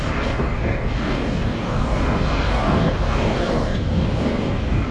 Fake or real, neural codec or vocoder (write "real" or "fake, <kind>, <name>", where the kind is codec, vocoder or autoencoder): fake, codec, DAC